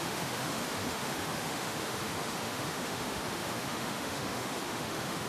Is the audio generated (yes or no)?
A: yes